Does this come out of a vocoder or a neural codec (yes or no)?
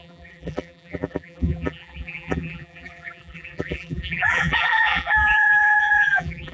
yes